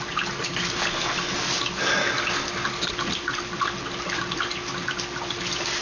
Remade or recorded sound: recorded